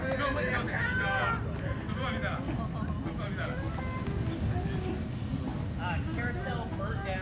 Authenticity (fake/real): real